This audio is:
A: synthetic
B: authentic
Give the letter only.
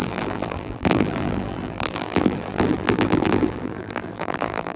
A